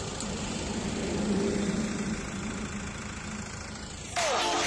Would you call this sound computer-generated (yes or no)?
yes